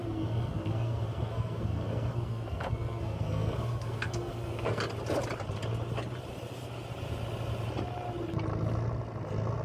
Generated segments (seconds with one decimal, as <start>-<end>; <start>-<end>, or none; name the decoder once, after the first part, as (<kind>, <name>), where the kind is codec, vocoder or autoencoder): 0.0-4.8 (codec, SNAC)